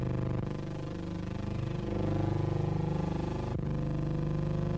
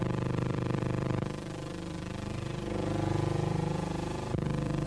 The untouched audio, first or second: first